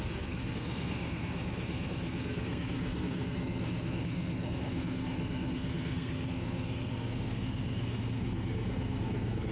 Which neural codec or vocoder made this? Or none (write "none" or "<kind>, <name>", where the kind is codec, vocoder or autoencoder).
codec, SNAC